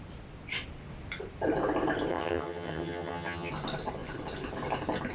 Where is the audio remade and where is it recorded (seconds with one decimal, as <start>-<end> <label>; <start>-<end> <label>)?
0.0-2.1 recorded; 2.1-3.5 remade; 3.5-5.1 recorded